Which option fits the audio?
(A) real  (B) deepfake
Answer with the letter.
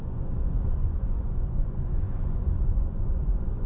B